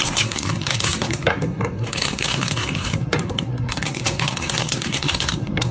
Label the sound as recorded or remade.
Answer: remade